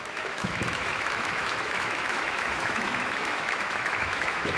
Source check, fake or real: fake